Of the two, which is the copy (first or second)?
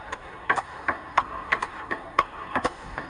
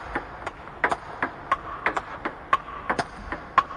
first